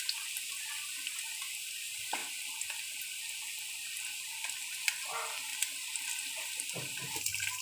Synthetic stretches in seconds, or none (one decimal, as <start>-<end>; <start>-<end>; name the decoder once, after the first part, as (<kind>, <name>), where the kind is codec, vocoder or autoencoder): none